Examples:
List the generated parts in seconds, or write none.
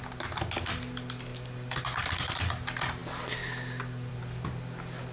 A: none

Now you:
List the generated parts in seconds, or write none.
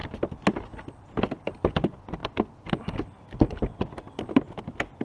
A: none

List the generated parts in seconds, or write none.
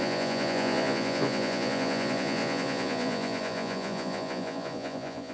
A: 0.0-5.3 (vocoder, Vocos)